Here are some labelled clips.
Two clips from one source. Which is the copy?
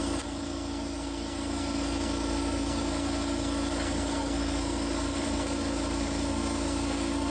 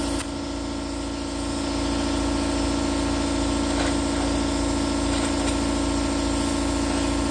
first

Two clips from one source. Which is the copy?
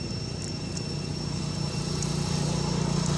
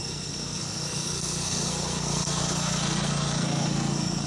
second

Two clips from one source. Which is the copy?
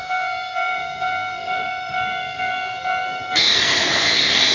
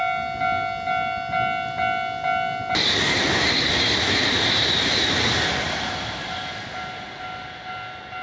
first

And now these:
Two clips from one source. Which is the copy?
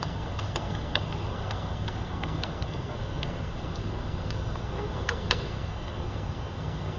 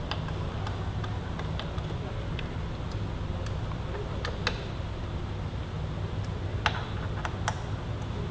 first